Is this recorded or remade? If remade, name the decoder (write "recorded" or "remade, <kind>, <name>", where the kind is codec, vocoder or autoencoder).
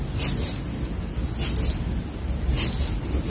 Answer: recorded